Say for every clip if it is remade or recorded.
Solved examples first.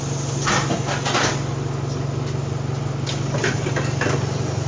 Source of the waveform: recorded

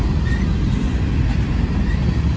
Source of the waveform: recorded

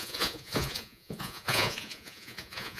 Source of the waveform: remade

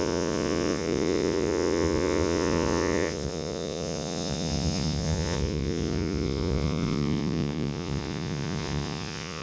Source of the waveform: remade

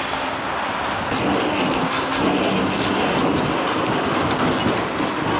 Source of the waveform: recorded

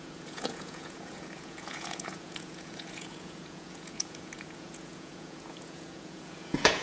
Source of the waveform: remade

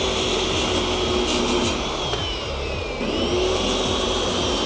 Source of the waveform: recorded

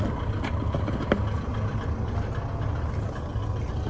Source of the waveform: recorded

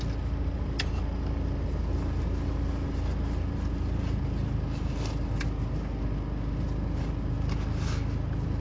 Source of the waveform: recorded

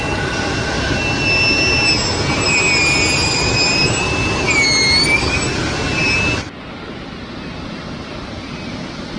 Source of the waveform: recorded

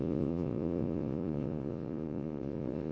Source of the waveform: remade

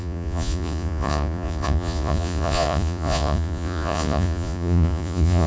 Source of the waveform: remade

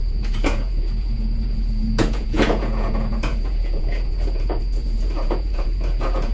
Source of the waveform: remade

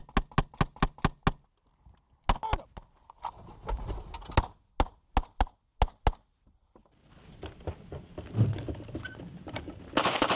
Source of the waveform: recorded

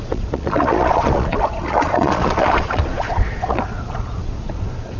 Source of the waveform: remade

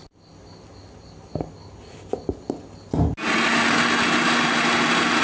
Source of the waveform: recorded